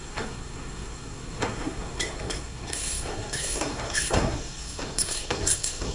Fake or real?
fake